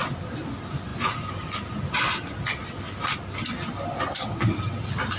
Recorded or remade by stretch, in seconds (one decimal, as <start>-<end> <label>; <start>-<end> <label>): 0.0-5.2 recorded